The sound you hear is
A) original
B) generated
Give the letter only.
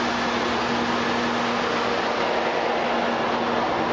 A